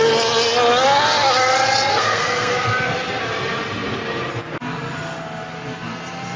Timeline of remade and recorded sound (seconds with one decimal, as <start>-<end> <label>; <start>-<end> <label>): 0.0-1.9 recorded; 1.9-2.5 remade; 2.5-6.4 recorded